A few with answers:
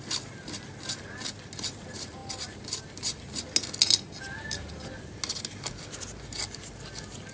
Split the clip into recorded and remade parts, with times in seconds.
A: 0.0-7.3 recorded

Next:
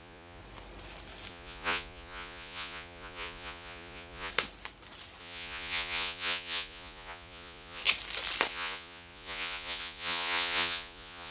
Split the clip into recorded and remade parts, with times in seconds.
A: 0.0-0.4 remade; 0.4-1.3 recorded; 1.3-4.3 remade; 4.3-5.2 recorded; 5.2-7.8 remade; 7.8-8.5 recorded; 8.5-11.3 remade